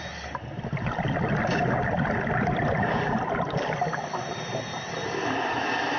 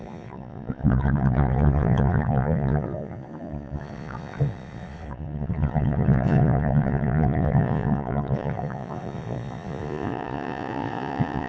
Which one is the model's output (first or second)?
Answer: second